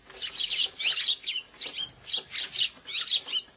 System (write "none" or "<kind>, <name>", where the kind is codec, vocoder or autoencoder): none